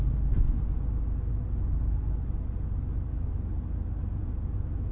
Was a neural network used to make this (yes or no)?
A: no